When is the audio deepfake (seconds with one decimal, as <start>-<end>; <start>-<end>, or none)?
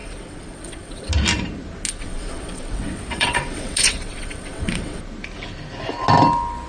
0.0-1.1; 2.0-5.0